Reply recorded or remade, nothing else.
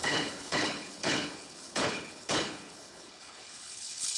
remade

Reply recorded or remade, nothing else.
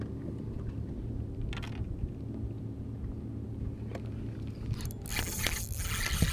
recorded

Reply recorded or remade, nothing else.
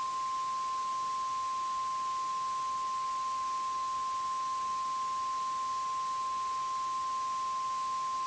recorded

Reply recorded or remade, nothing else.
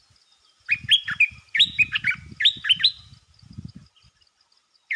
recorded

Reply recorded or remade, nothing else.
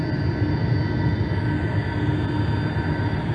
recorded